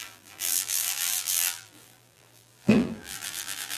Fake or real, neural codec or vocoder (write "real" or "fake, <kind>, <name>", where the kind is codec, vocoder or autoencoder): fake, vocoder, BigVGAN v2